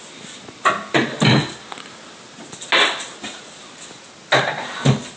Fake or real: real